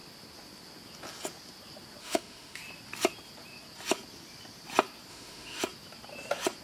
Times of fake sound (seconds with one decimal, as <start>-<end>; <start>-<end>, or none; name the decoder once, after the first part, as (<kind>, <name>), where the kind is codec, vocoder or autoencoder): 2.0-2.6 (autoencoder, DAC-VAE); 5.1-5.6